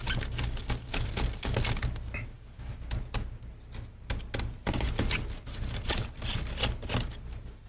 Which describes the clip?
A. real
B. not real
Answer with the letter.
A